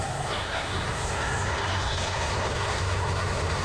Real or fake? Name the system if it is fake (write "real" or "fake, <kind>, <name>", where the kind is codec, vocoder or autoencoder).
fake, codec, SNAC